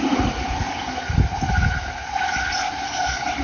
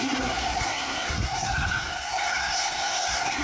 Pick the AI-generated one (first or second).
second